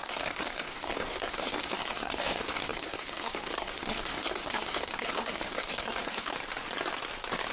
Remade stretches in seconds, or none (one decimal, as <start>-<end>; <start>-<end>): 0.0-6.3